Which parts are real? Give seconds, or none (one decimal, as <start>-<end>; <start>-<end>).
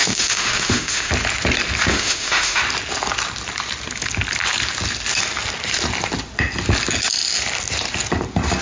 1.1-1.9; 2.6-8.6